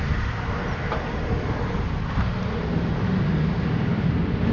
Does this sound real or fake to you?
real